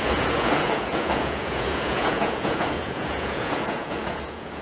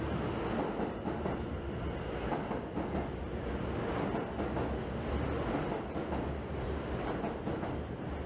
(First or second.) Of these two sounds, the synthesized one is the first